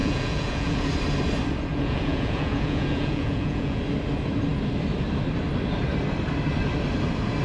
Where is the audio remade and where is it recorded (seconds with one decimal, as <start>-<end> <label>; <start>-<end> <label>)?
0.0-0.9 remade; 0.9-1.7 recorded; 1.7-3.8 remade; 3.8-7.4 recorded